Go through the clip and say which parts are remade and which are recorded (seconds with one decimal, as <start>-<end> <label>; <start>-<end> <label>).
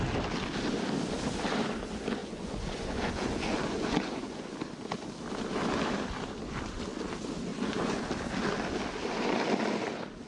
0.0-2.2 recorded; 2.2-4.5 remade; 4.5-7.5 recorded; 7.5-8.0 remade; 8.0-10.3 recorded